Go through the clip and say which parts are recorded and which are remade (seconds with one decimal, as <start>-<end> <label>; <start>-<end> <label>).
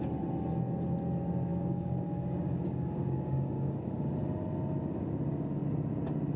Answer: 0.0-1.5 recorded; 1.5-4.1 remade; 4.1-6.4 recorded